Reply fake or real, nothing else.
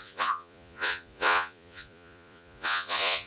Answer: fake